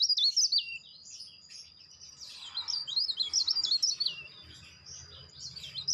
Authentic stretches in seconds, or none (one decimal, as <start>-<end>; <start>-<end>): 0.0-5.9